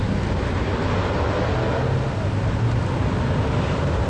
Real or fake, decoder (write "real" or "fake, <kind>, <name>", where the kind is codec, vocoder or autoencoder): real